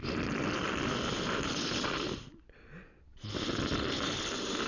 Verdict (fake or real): real